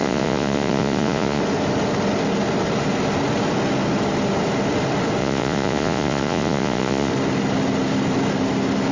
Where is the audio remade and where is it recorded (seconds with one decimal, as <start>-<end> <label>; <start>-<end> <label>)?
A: 0.0-1.4 remade; 1.4-5.2 recorded; 5.2-7.1 remade; 7.1-8.9 recorded